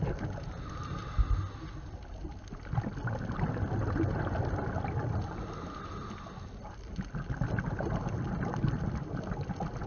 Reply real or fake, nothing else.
real